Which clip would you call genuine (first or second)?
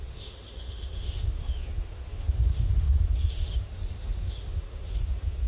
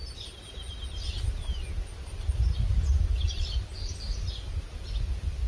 second